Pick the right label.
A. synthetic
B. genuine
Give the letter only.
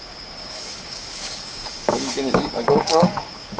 A